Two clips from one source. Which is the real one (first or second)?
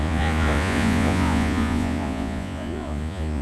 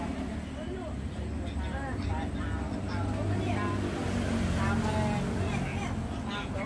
second